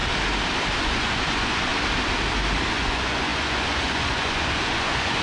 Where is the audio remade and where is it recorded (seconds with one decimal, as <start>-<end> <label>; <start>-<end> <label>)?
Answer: 0.0-0.8 recorded; 0.8-1.7 remade; 1.7-2.7 recorded; 2.7-5.2 remade